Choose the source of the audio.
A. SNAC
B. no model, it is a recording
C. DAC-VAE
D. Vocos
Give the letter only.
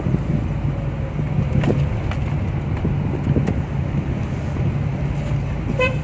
B